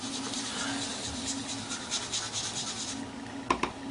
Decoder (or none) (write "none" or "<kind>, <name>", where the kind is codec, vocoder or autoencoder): none